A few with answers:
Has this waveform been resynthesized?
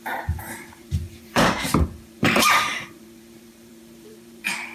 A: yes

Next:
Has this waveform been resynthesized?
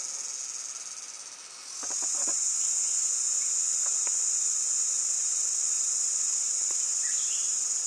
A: no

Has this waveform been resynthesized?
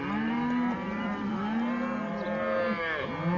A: no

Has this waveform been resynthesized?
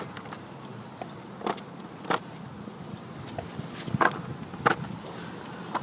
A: no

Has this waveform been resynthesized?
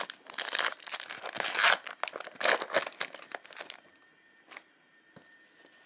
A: no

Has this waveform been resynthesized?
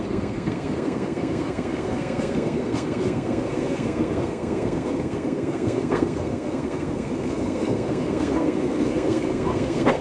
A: yes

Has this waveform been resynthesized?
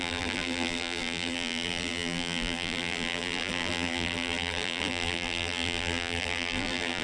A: yes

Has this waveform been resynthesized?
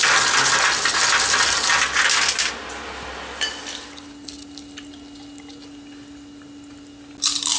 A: no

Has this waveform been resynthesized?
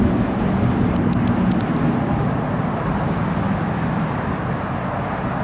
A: no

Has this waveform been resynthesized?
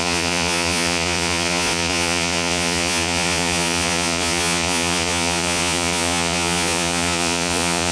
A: yes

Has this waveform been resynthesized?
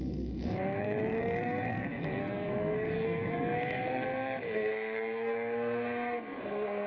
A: yes